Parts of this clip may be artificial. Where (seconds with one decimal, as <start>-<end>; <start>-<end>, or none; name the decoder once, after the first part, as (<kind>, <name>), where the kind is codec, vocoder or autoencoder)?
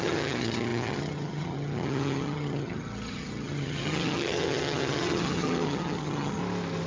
0.0-6.4 (vocoder, HiFi-GAN)